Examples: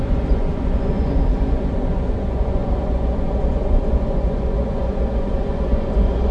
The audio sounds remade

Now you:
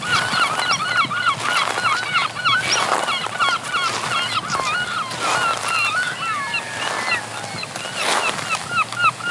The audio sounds recorded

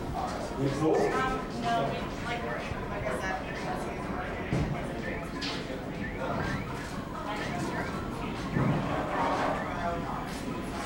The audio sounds recorded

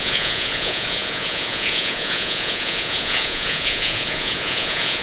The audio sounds remade